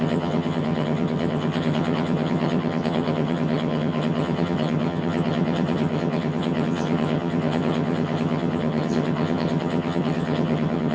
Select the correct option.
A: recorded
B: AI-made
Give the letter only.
B